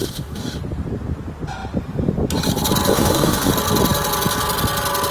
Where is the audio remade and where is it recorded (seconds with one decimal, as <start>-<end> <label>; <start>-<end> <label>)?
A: 0.0-0.6 remade; 0.6-2.9 recorded; 2.9-3.5 remade; 3.5-5.1 recorded